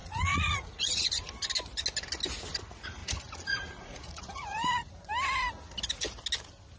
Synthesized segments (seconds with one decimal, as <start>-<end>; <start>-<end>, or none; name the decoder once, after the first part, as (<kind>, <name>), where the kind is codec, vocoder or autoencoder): 0.0-1.0 (vocoder, Vocos); 3.0-5.1